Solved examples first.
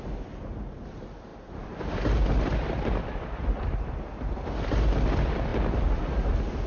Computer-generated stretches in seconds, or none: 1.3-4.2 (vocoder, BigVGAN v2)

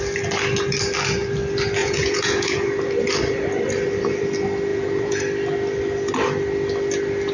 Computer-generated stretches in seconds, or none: 1.8-2.8 (vocoder, Vocos); 4.7-5.2

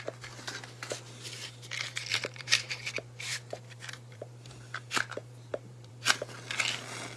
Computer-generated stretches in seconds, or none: 2.1-2.7 (vocoder, BigVGAN v2); 3.3-6.2

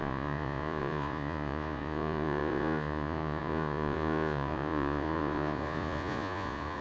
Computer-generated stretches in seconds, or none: 0.0-6.8 (vocoder, Vocos)

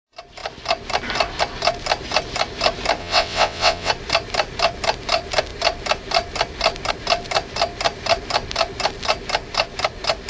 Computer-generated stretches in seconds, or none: 3.0-3.9 (vocoder, WaveNeXt)